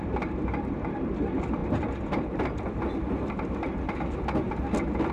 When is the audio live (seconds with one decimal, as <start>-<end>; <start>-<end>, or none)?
0.0-5.1